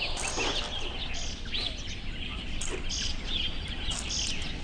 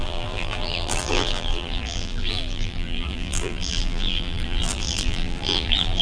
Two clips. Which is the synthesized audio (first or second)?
second